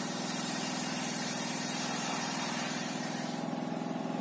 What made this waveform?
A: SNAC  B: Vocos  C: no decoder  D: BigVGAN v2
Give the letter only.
D